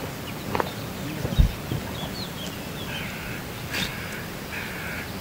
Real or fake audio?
real